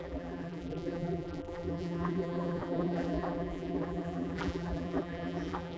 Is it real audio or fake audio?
fake